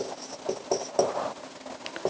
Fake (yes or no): no